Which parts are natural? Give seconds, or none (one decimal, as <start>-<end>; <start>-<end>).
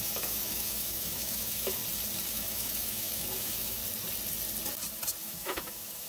1.8-2.3; 3.8-5.2